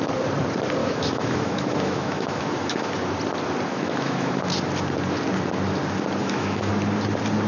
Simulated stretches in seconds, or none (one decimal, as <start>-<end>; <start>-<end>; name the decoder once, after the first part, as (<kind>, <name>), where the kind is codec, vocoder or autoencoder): 0.8-2.9 (autoencoder, DAC-VAE); 3.7-4.5; 6.2-6.7